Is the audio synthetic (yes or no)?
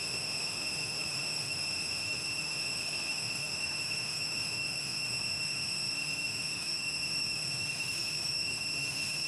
yes